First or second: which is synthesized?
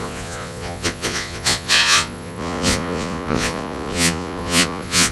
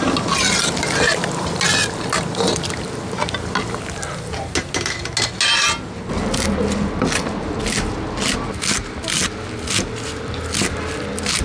first